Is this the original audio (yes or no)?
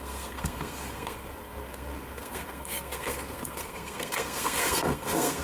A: no